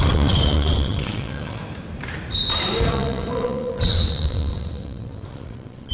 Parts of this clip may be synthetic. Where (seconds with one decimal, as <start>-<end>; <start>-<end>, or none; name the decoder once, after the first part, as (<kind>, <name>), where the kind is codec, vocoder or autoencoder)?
0.0-1.6 (vocoder, WaveNeXt); 2.9-5.9